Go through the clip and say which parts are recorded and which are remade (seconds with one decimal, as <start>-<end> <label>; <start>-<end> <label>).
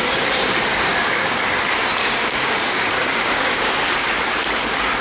0.0-0.7 recorded; 0.7-1.4 remade; 1.4-2.0 recorded; 2.0-3.7 remade; 3.7-5.0 recorded